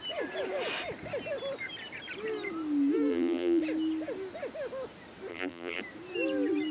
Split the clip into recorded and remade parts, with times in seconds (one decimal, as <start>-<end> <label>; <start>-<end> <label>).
0.0-3.1 recorded; 3.1-3.6 remade; 3.6-5.3 recorded; 5.3-5.8 remade; 5.8-6.7 recorded